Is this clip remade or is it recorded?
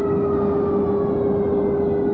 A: recorded